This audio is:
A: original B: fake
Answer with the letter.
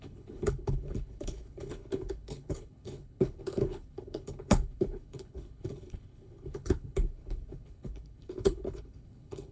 B